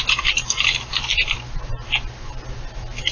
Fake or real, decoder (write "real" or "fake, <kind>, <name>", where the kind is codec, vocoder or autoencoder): real